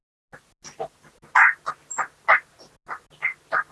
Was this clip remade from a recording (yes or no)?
no